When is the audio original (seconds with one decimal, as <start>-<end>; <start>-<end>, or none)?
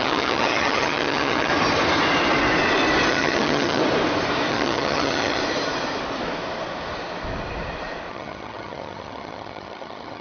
1.5-3.1; 3.8-4.5; 5.4-8.1